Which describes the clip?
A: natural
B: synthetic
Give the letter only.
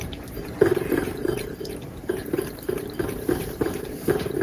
B